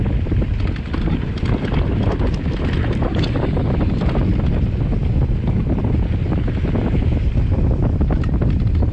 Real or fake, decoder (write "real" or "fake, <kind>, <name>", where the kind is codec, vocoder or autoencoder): real